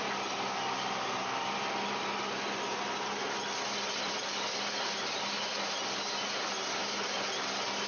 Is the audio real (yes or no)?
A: yes